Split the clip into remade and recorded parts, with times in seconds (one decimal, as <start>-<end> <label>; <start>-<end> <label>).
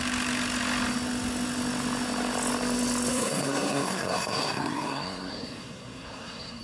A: 0.0-3.1 recorded; 3.1-6.6 remade